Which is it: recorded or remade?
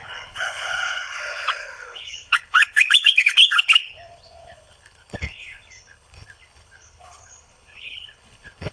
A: remade